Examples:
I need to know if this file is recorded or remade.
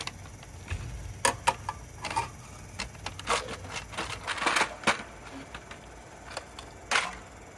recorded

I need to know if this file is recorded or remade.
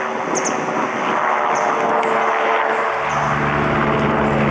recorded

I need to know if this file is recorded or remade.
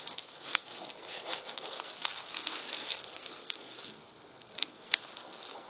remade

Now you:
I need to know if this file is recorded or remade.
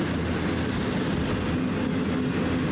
recorded